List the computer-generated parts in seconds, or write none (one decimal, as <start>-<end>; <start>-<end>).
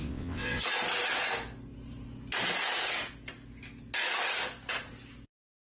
0.0-0.6